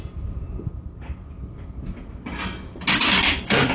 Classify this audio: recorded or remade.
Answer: recorded